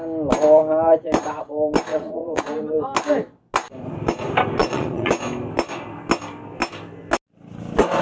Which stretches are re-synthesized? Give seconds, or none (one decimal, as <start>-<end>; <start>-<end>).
1.9-2.4; 4.6-5.1